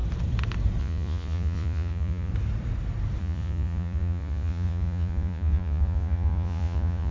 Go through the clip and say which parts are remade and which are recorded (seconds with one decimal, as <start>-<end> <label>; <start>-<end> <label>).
0.0-0.8 recorded; 0.8-2.3 remade; 2.3-3.2 recorded; 3.2-7.1 remade